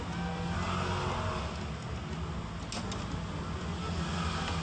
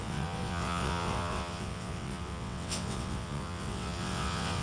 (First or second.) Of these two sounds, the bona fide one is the first